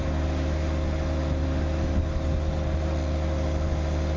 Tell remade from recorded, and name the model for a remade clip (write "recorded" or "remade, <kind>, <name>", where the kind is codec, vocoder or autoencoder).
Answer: recorded